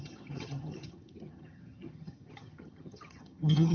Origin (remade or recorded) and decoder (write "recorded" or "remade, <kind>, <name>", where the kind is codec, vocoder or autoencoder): remade, vocoder, HiFi-GAN